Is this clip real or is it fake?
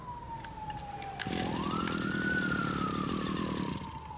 real